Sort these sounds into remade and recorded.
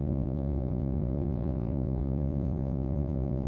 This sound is remade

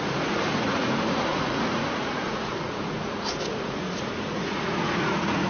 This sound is remade